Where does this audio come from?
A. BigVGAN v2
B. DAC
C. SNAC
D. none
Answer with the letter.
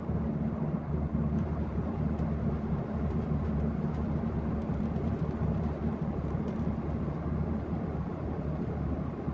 D